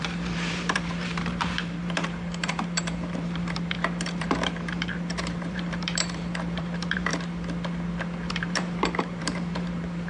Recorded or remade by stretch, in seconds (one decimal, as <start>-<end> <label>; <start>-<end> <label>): 0.0-7.1 remade; 7.1-8.3 recorded; 8.3-10.1 remade